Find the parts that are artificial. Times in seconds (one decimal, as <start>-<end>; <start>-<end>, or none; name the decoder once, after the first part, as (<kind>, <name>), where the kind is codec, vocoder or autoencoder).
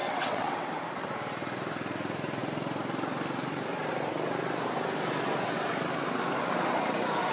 0.0-0.8 (vocoder, WaveNeXt)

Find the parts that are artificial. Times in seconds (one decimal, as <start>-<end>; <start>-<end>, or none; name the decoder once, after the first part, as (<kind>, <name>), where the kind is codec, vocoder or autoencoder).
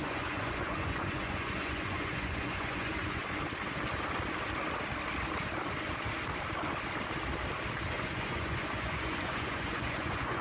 0.0-3.2 (vocoder, Vocos); 7.9-10.4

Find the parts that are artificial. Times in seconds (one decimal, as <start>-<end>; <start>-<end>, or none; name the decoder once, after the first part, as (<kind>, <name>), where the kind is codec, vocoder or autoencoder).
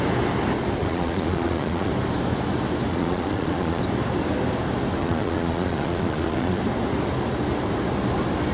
0.8-1.9 (vocoder, Vocos); 2.9-3.8; 5.0-6.6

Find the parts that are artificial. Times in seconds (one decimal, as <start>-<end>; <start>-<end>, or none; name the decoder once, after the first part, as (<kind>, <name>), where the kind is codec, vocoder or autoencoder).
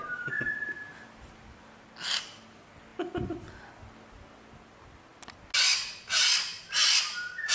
none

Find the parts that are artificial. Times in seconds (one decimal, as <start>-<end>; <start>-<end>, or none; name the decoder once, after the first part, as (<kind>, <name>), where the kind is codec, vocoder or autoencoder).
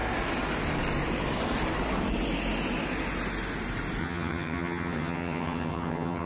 4.0-6.3 (vocoder, HiFi-GAN)